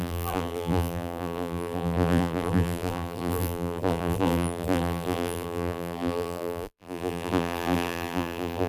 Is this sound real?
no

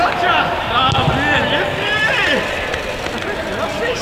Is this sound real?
yes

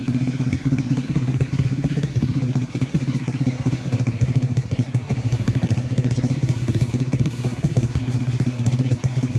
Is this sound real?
no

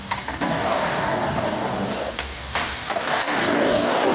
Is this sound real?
no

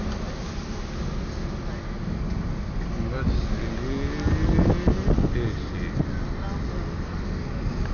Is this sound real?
yes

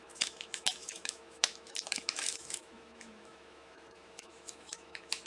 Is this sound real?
no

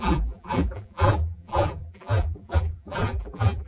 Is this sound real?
no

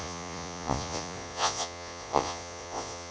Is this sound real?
no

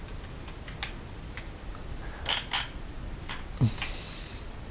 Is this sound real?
yes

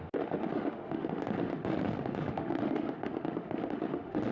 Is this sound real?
no